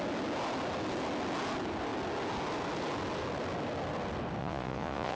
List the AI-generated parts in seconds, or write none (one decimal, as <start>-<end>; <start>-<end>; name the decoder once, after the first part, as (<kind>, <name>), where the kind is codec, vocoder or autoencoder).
4.4-5.2 (vocoder, Vocos)